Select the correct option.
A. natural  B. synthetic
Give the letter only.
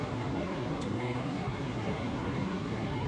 B